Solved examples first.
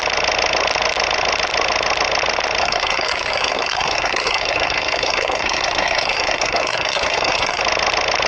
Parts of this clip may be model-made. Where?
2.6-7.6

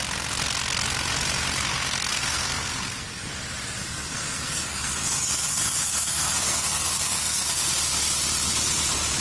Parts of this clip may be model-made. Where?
2.1-3.3; 3.8-7.7

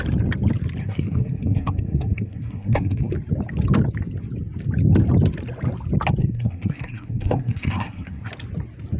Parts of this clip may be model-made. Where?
0.8-3.1; 6.2-8.3

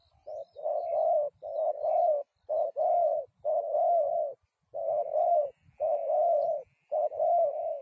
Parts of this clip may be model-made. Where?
none

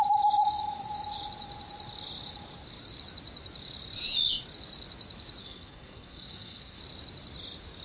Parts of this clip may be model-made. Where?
5.4-6.8

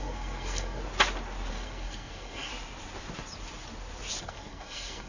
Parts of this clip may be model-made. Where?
0.0-0.8; 1.5-2.5; 4.2-5.1